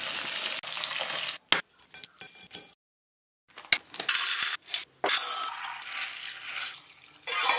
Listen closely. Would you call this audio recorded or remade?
recorded